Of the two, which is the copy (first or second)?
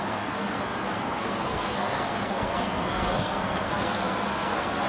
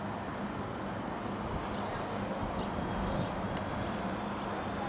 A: first